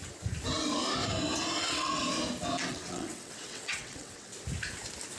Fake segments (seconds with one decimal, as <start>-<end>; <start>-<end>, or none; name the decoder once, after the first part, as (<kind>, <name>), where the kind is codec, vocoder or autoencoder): 1.6-2.0 (vocoder, WaveNeXt); 2.7-4.3